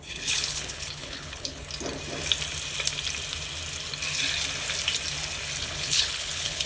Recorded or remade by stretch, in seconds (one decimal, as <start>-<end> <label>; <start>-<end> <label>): 0.0-1.6 remade; 1.6-5.6 recorded; 5.6-6.7 remade